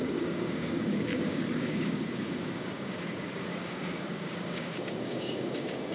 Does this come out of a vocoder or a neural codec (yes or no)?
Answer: yes